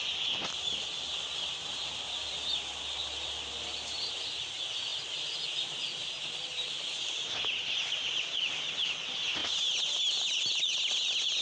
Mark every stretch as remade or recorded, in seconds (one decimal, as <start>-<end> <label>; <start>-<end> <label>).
0.0-11.4 recorded